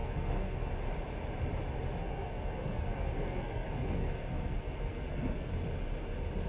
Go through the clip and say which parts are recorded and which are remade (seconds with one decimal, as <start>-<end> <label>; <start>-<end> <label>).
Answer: 0.0-0.7 remade; 0.7-2.0 recorded; 2.0-5.5 remade; 5.5-6.5 recorded